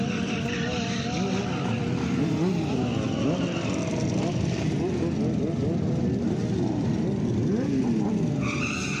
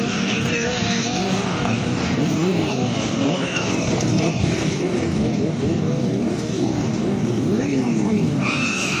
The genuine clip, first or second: first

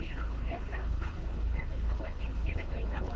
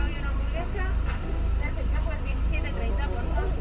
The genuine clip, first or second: second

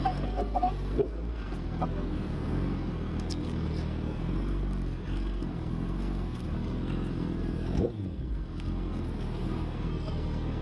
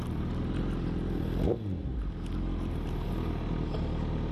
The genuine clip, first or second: second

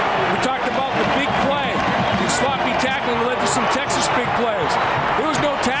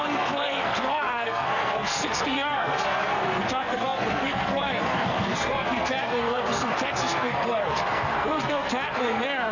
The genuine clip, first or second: first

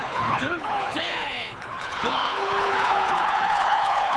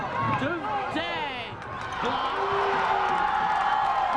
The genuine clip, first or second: second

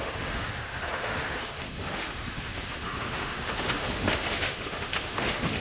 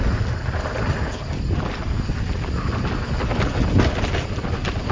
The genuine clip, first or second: second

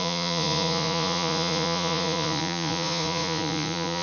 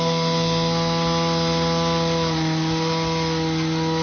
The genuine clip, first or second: second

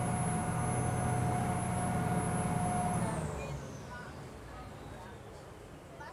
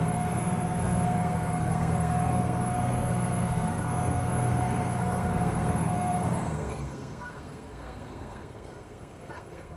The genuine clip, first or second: first